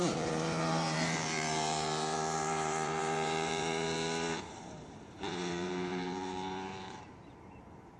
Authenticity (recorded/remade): remade